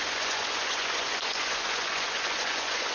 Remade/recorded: remade